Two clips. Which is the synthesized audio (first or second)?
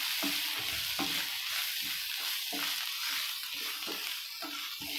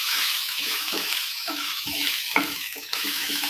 second